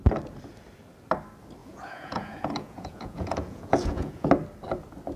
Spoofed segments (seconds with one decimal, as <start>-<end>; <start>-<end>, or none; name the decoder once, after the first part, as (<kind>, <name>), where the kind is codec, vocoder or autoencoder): 1.6-4.3 (vocoder, Vocos)